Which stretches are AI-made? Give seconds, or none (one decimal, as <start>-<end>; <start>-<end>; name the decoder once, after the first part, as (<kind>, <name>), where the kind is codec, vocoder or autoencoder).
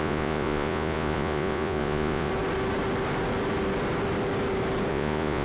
0.0-2.3 (vocoder, Vocos); 4.9-5.4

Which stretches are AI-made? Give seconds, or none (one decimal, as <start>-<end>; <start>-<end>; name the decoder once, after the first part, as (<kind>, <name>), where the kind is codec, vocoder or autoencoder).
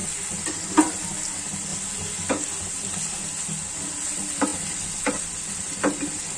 none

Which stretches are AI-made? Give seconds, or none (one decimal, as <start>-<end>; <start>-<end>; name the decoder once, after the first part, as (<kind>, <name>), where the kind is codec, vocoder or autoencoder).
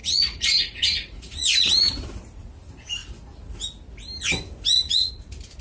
0.0-1.7 (vocoder, Vocos)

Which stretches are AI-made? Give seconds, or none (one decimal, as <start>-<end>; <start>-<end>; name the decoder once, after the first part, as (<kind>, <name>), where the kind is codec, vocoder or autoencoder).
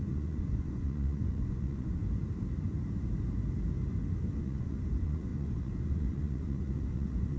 0.0-2.0 (vocoder, Vocos); 4.4-7.4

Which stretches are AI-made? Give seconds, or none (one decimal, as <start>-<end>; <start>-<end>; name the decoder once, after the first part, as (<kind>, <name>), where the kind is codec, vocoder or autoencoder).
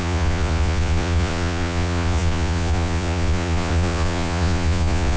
0.0-5.2 (vocoder, Vocos)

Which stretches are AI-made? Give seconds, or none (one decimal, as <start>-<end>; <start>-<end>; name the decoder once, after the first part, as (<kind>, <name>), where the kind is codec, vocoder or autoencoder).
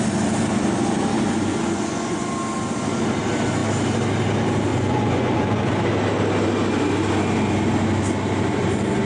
1.5-2.3 (vocoder, Vocos); 4.7-5.7